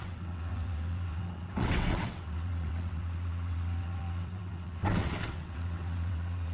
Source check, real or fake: fake